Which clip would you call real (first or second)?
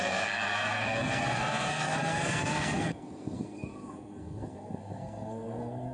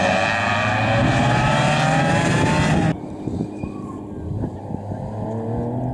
second